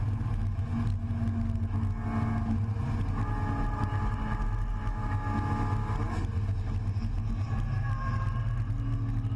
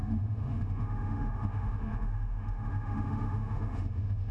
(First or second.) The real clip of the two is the first